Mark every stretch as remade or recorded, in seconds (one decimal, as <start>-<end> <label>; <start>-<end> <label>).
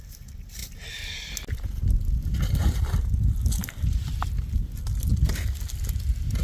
0.0-6.4 recorded